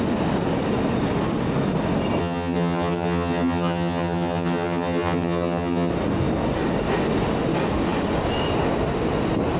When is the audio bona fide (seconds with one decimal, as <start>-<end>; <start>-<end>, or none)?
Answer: 0.0-2.2; 5.9-9.6